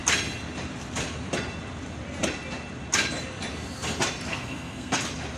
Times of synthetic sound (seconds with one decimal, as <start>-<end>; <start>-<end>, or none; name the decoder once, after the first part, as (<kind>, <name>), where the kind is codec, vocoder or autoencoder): 4.3-5.0 (codec, SNAC)

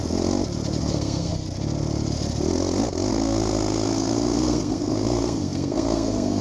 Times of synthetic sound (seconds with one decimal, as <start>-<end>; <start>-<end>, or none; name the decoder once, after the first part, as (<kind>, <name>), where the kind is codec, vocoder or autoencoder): 0.8-1.3 (codec, SNAC); 3.1-6.4

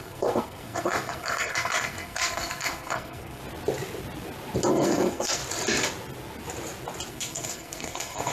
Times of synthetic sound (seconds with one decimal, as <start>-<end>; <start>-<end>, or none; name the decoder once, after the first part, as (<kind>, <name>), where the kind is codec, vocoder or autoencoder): 0.0-3.4 (codec, SNAC); 4.7-5.4; 7.1-8.3

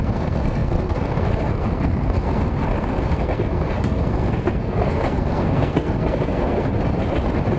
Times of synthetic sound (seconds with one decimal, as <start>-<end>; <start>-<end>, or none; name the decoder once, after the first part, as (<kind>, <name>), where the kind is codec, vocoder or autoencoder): 0.0-6.7 (codec, SNAC)

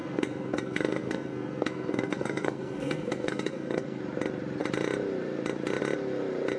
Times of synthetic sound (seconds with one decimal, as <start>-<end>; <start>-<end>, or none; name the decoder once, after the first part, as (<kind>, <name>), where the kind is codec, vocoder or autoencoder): 0.0-4.0 (codec, SNAC)

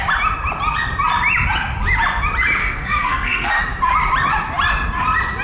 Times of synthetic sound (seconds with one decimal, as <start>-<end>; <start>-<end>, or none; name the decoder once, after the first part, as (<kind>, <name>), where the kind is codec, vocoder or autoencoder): 2.6-3.6 (codec, SNAC)

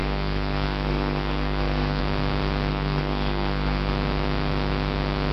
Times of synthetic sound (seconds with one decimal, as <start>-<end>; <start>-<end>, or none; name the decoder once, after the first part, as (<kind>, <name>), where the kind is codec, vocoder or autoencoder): 0.0-2.0 (codec, SNAC); 2.7-3.9